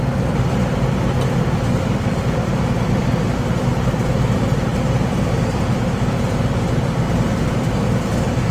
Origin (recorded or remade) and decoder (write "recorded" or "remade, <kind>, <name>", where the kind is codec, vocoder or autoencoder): recorded